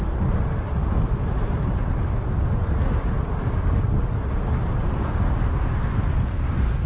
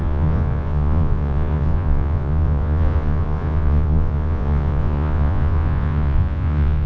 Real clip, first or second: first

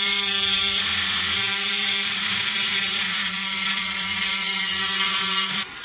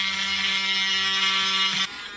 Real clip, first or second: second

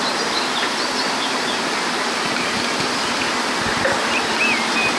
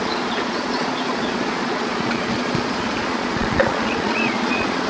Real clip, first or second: first